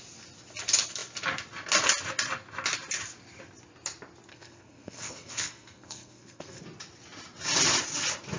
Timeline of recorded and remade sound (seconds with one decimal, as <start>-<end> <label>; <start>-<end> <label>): 0.0-4.3 recorded; 4.3-6.6 remade; 6.6-8.4 recorded